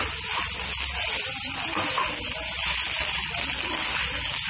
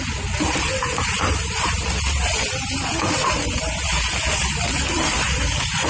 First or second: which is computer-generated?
second